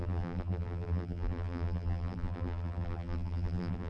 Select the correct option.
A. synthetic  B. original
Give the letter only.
A